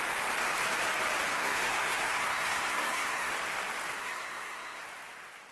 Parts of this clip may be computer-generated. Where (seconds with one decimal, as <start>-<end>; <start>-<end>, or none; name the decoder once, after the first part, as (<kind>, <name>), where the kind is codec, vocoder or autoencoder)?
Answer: 1.3-3.3 (codec, SNAC); 4.0-4.8